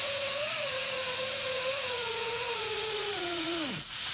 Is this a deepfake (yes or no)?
yes